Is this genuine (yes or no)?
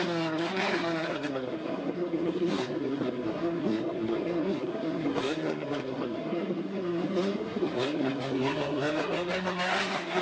no